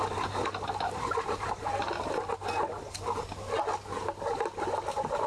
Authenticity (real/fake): real